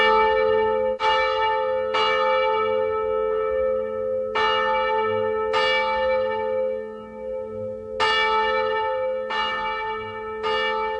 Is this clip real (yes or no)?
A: yes